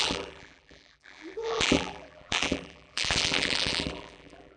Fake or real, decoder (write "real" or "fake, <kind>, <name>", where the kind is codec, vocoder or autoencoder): fake, vocoder, BigVGAN v2